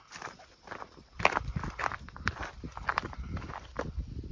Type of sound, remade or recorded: recorded